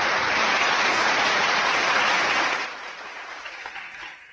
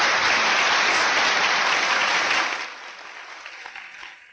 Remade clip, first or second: first